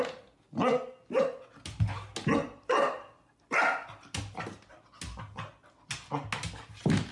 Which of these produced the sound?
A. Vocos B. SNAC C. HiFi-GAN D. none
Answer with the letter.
D